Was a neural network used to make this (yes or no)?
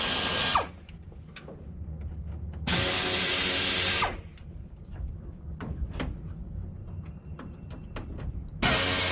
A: no